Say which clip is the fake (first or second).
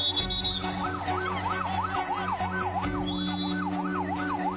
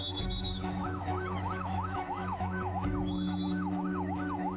second